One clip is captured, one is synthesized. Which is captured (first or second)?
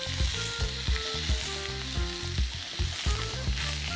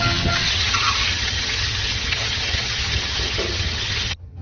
first